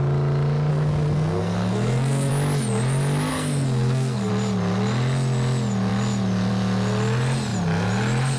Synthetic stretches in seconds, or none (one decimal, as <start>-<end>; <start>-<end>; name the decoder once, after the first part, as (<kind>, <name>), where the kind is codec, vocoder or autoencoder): 0.7-2.3 (codec, SNAC); 3.3-4.3